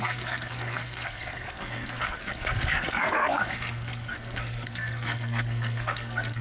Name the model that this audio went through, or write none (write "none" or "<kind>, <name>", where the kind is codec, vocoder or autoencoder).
codec, SNAC